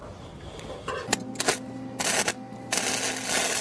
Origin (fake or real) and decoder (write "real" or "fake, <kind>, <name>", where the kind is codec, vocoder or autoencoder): real